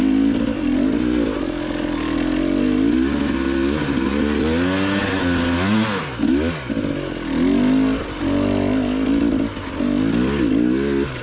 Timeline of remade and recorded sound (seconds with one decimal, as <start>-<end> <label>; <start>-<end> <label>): 0.0-11.2 recorded